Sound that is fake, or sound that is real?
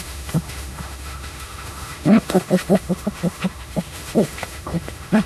fake